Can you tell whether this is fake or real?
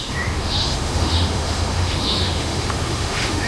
fake